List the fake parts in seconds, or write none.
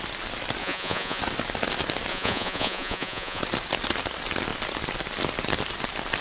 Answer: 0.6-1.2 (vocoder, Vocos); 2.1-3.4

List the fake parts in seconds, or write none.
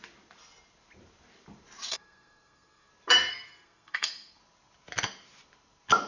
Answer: 1.9-2.9 (codec, SNAC); 3.3-4.4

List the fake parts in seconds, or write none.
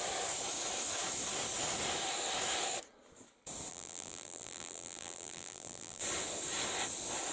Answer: 3.7-6.0 (vocoder, BigVGAN v2)